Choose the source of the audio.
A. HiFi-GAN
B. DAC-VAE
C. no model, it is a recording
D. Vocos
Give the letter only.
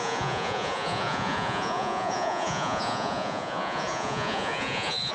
D